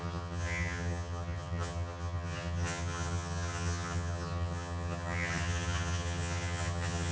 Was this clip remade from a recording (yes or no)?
yes